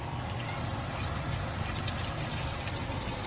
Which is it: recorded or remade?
recorded